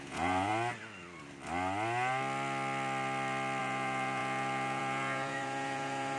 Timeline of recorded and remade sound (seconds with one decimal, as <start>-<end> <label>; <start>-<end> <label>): 0.0-0.5 remade; 0.5-3.6 recorded; 3.6-6.2 remade